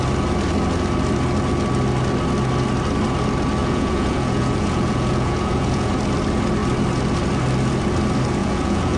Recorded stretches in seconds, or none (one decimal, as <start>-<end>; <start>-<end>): 0.0-3.6; 5.9-8.4